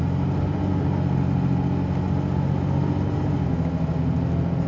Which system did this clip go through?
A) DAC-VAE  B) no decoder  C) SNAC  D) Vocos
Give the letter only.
B